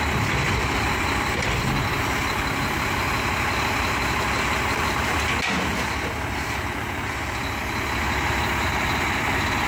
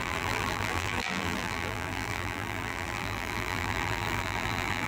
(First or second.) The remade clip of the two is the second